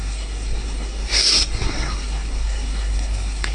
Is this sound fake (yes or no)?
yes